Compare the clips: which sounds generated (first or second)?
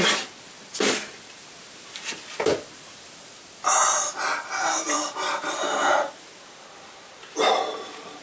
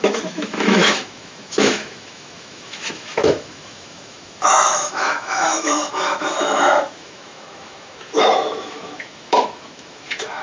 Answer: second